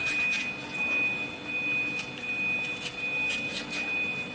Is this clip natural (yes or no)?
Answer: yes